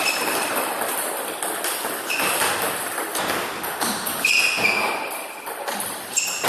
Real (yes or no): yes